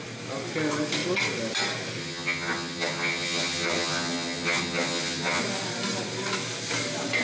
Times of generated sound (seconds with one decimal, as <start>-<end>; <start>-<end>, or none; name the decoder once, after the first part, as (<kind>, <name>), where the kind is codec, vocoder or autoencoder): 2.0-5.4 (vocoder, HiFi-GAN)